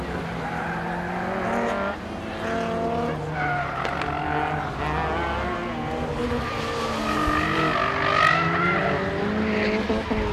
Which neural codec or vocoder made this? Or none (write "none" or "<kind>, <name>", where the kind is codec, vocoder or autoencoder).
none